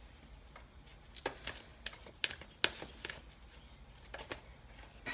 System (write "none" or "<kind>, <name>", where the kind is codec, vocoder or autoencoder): none